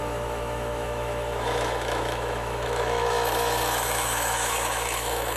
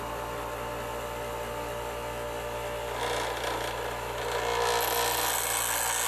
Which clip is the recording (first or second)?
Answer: second